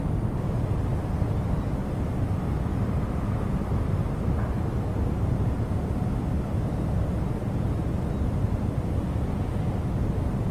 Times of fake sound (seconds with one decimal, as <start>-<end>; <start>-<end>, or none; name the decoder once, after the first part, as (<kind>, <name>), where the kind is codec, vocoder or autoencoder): 2.7-6.1 (vocoder, BigVGAN v2)